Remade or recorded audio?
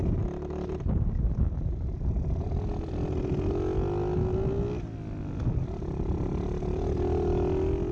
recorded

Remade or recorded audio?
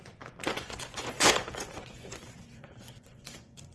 remade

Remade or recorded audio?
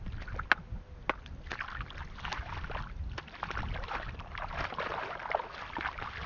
recorded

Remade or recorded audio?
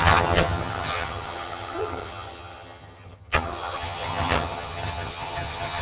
remade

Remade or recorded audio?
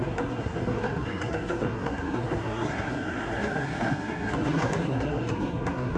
remade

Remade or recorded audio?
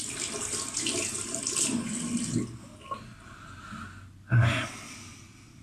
recorded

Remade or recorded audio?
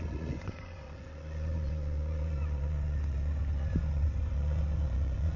remade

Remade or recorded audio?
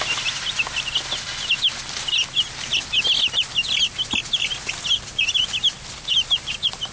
recorded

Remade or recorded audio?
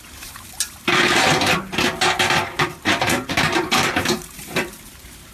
remade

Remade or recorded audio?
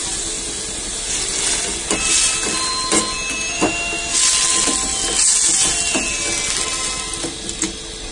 recorded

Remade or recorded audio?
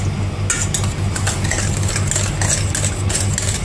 recorded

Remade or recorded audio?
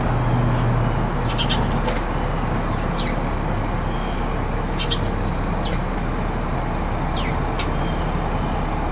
recorded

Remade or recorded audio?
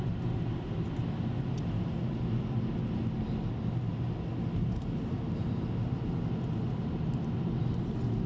recorded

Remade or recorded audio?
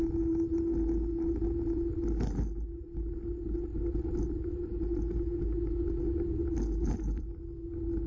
recorded